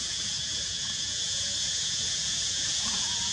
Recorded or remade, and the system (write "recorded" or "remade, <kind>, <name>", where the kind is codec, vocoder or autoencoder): remade, vocoder, Vocos